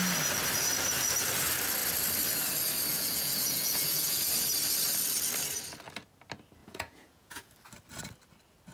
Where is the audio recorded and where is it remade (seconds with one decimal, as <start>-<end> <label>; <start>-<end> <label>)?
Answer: 0.0-2.9 recorded; 2.9-4.3 remade; 4.3-6.6 recorded; 6.6-7.5 remade; 7.5-8.7 recorded